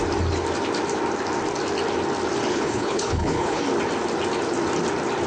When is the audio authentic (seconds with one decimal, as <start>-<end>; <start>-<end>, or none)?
0.0-2.5; 3.6-5.3